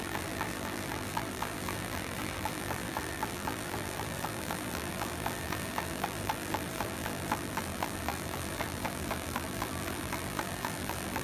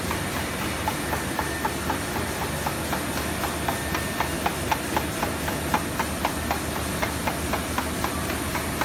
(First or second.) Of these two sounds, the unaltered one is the second